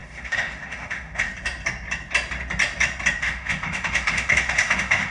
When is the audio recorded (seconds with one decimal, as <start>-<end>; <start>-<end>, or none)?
1.3-3.2